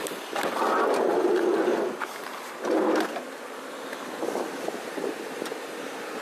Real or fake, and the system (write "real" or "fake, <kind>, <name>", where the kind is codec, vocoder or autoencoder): real